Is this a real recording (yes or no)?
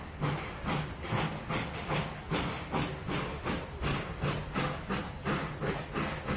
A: yes